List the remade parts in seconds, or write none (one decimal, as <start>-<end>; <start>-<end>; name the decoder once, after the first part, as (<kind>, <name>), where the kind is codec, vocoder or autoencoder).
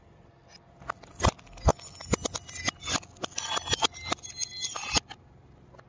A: none